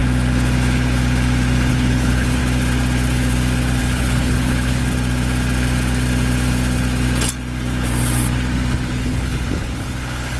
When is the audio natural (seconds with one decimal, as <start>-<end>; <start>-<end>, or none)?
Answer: 0.0-1.7; 2.4-3.8; 4.8-9.0